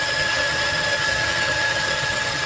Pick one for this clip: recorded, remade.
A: remade